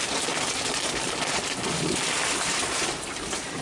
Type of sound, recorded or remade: remade